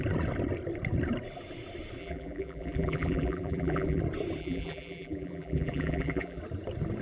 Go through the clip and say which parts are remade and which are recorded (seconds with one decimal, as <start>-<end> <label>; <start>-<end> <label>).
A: 0.0-2.0 recorded; 2.0-4.0 remade; 4.0-4.4 recorded; 4.4-6.4 remade; 6.4-7.0 recorded